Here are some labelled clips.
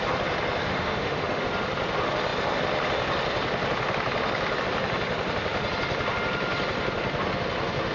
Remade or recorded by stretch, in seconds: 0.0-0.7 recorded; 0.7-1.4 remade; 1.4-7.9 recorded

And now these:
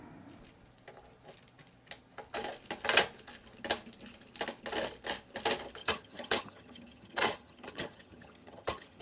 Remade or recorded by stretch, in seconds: 0.0-5.8 recorded; 5.8-9.0 remade

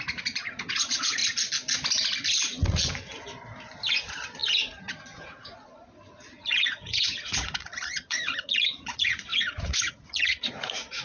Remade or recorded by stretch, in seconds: 0.0-1.2 remade; 1.2-3.9 recorded; 3.9-11.0 remade

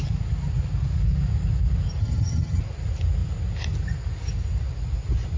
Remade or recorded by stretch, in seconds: 0.0-2.0 recorded; 2.0-2.6 remade; 2.6-5.4 recorded